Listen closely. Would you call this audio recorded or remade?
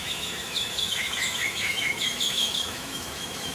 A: remade